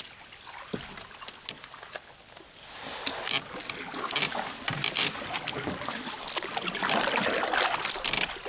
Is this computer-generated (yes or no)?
no